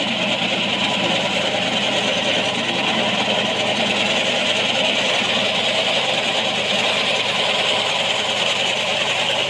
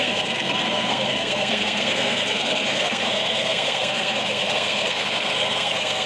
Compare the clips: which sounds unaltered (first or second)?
first